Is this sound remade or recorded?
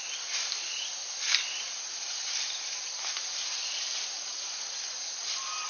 recorded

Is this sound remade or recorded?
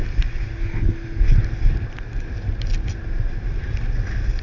recorded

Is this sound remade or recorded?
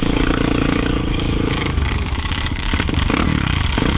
remade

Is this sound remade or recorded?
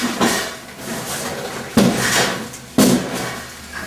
recorded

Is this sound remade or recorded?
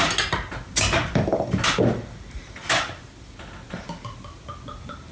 recorded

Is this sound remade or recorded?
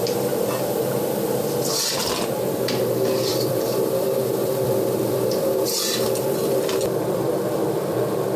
remade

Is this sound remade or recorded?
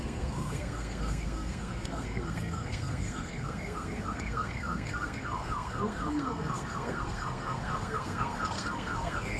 remade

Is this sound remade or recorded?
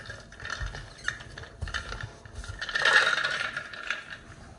recorded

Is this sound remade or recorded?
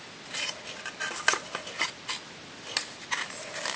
recorded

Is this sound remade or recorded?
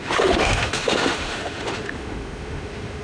remade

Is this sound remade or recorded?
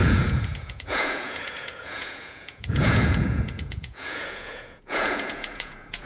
remade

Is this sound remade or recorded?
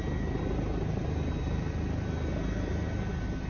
recorded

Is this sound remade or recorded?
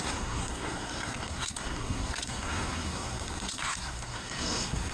remade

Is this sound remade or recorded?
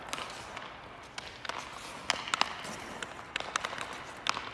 recorded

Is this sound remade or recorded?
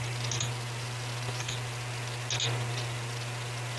recorded